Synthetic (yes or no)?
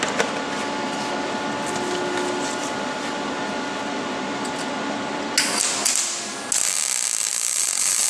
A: no